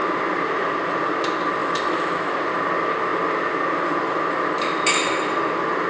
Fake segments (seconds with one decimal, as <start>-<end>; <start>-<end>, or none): 1.6-2.3